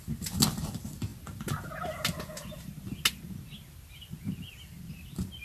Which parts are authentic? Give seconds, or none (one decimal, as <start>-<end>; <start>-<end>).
0.0-5.4